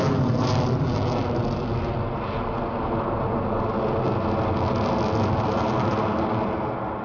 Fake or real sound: real